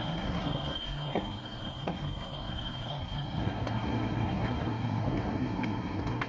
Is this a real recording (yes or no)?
no